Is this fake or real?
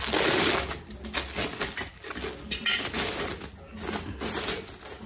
real